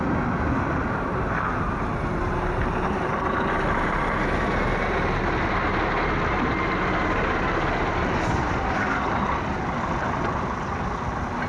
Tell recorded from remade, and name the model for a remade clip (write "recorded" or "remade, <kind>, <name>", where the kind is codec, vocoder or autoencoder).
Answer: recorded